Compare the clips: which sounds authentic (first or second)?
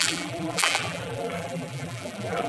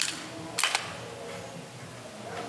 second